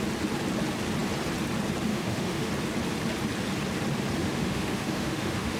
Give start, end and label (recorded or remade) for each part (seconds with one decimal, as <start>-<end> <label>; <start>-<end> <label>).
0.0-1.9 recorded; 1.9-2.5 remade; 2.5-4.2 recorded; 4.2-5.6 remade